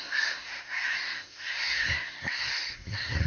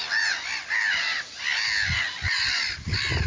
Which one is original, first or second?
second